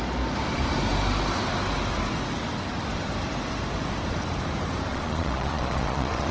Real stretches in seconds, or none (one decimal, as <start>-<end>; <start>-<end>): 0.0-4.9